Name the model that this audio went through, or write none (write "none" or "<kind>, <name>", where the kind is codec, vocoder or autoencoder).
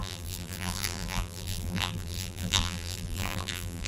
vocoder, BigVGAN v2